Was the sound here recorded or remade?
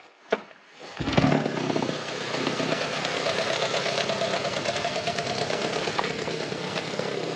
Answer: remade